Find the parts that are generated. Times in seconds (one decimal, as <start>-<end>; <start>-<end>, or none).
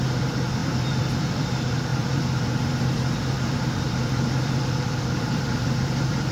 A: 0.0-6.3